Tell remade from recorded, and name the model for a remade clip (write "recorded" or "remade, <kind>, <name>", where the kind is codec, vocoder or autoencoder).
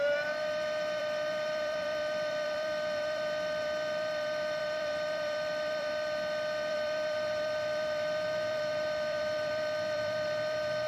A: remade, vocoder, BigVGAN v2